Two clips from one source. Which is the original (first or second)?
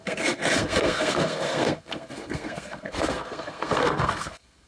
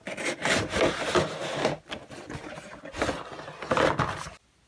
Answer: second